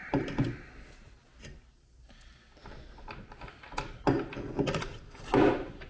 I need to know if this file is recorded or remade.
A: recorded